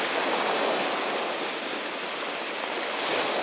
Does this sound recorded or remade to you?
recorded